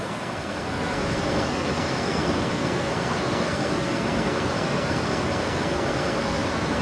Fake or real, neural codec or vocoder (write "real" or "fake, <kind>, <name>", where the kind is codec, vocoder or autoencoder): fake, codec, SNAC